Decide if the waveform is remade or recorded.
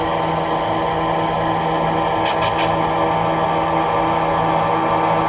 recorded